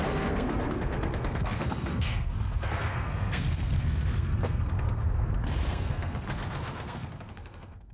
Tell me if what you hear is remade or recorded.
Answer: remade